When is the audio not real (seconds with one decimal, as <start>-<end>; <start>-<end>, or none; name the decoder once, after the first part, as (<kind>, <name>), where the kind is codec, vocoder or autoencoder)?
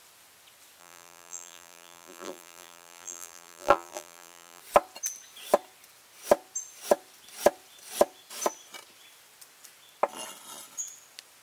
0.8-4.6 (vocoder, BigVGAN v2)